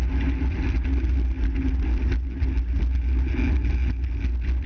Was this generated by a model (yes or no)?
no